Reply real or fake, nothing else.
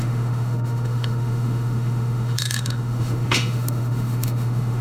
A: fake